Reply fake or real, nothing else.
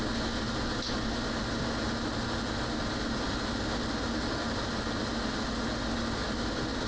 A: real